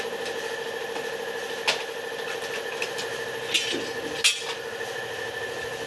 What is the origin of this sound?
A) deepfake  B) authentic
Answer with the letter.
B